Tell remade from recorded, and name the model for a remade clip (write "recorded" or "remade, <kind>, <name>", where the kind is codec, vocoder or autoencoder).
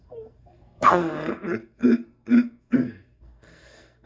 remade, codec, SNAC